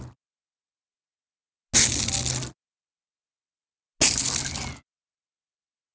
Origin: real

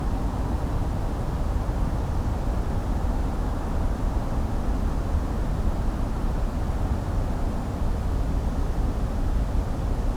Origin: real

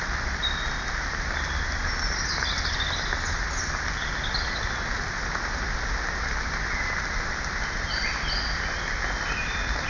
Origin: real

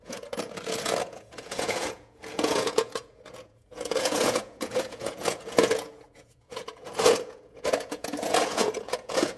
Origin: fake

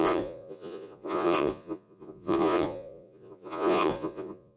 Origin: fake